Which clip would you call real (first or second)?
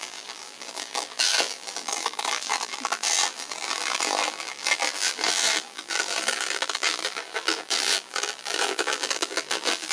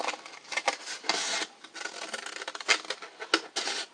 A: second